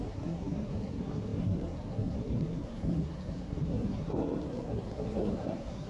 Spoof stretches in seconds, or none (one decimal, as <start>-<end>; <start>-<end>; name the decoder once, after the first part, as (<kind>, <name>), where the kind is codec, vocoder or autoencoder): 0.0-5.9 (codec, SNAC)